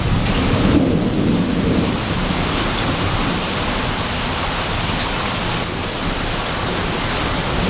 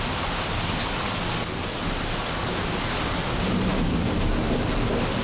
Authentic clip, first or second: second